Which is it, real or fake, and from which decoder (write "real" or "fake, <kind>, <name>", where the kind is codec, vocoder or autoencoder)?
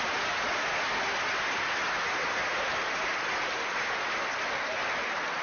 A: real